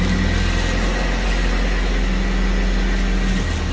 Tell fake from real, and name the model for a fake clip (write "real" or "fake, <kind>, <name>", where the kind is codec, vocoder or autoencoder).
real